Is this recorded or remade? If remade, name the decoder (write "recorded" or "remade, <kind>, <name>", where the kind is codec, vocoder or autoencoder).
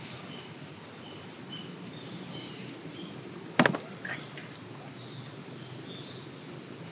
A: recorded